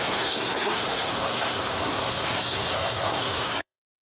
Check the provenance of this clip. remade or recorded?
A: remade